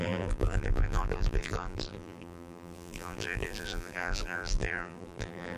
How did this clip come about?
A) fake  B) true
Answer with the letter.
A